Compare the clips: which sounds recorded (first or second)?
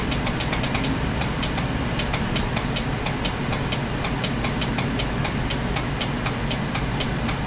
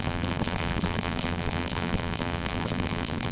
first